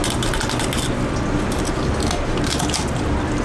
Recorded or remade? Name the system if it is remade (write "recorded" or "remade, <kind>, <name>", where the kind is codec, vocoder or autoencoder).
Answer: recorded